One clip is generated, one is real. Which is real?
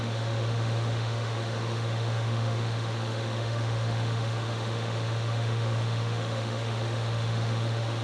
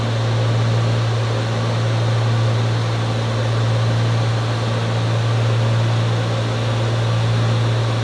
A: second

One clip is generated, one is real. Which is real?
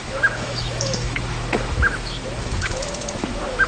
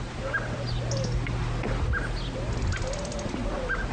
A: second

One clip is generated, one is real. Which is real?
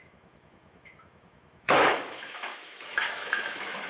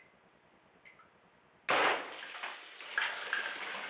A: second